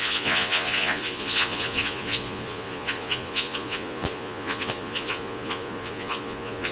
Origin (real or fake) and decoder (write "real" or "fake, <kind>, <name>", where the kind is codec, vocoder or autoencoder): fake, vocoder, Vocos